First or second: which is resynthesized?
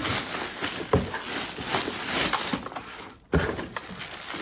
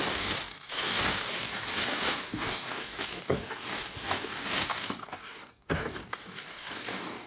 second